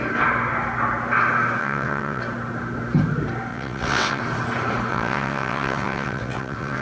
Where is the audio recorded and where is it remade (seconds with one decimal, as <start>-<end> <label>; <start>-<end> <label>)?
0.0-1.6 recorded; 1.6-2.2 remade; 2.2-3.5 recorded; 3.5-4.2 remade; 4.2-4.9 recorded; 4.9-6.8 remade